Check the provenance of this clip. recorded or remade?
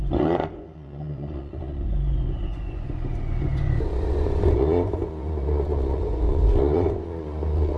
remade